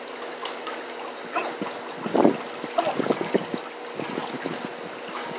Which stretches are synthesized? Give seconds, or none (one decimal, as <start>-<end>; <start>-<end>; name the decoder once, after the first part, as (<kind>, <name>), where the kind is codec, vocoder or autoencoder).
none